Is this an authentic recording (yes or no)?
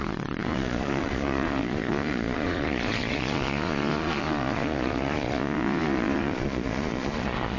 no